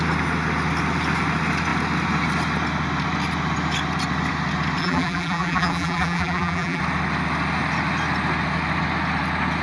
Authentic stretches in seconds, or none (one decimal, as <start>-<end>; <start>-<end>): 0.0-4.8; 6.8-9.6